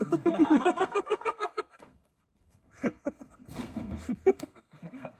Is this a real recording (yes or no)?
no